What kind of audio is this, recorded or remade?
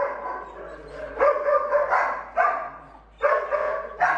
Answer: recorded